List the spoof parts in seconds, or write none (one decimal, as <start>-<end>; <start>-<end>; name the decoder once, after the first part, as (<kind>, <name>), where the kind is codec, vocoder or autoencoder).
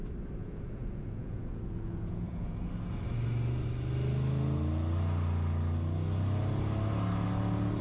0.4-2.7 (vocoder, Vocos)